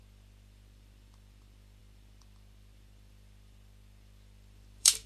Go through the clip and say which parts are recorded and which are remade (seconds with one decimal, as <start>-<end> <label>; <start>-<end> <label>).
0.0-5.1 remade